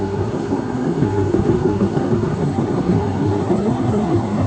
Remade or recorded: remade